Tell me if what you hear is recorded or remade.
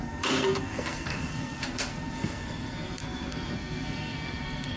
remade